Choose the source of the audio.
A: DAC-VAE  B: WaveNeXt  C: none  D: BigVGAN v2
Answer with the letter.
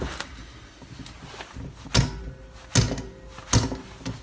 C